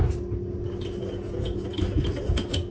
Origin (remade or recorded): recorded